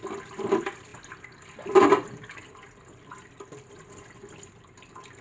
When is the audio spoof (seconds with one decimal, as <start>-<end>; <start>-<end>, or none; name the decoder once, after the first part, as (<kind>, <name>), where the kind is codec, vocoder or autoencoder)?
none